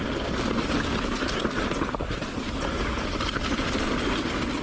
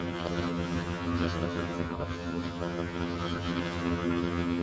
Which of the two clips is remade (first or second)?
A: second